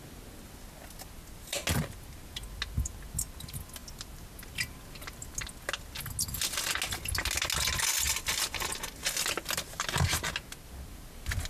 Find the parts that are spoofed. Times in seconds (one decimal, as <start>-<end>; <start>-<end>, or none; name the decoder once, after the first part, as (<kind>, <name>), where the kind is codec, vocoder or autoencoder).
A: none